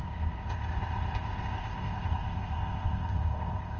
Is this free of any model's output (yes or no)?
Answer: no